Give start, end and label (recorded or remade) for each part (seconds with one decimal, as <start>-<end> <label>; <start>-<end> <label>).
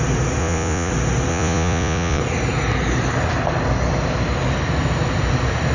0.0-0.4 recorded; 0.4-0.9 remade; 0.9-1.3 recorded; 1.3-2.2 remade; 2.2-5.7 recorded